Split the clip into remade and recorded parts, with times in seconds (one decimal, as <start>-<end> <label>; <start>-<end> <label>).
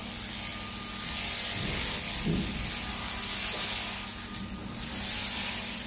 0.0-5.9 recorded